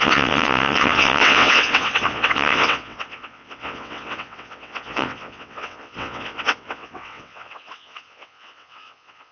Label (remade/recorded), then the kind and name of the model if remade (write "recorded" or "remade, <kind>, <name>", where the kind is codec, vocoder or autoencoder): remade, vocoder, WaveNeXt